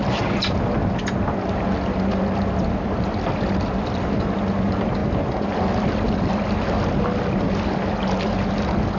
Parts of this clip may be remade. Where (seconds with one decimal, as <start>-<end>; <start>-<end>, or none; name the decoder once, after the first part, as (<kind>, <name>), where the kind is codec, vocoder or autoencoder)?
none